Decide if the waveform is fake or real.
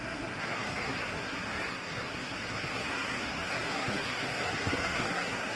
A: fake